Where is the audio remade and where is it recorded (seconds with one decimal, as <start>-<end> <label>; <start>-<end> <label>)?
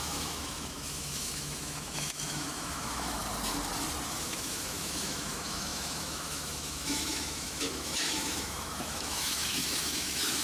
0.0-3.2 remade; 3.2-4.1 recorded; 4.1-10.4 remade